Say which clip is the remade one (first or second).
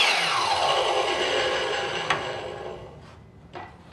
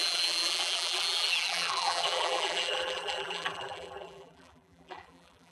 second